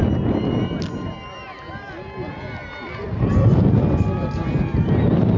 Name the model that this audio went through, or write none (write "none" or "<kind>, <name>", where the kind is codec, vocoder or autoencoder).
none